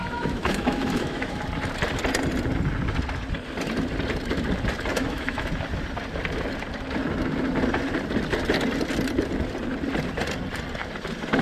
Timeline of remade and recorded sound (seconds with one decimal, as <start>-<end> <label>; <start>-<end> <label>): 0.0-1.4 remade; 1.4-4.9 recorded; 4.9-5.5 remade; 5.5-11.4 recorded